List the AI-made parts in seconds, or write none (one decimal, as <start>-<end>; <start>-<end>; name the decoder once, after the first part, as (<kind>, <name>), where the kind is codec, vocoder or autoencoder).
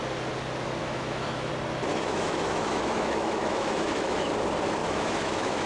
0.8-1.5 (autoencoder, DAC-VAE); 1.9-4.3; 4.8-5.7